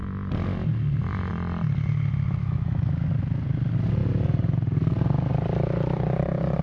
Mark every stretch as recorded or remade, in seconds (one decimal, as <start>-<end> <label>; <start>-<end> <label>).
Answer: 0.0-2.4 recorded; 2.4-2.9 remade; 2.9-6.6 recorded